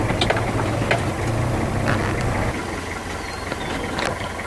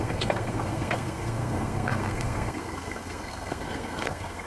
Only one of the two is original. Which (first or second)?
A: first